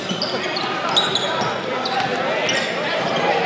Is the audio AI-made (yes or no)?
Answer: no